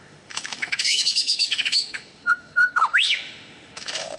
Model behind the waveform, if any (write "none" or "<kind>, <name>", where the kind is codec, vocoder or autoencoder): autoencoder, DAC-VAE